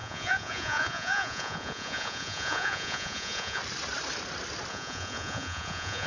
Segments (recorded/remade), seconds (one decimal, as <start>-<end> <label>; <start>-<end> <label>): 0.0-3.6 remade; 3.6-4.7 recorded; 4.7-6.1 remade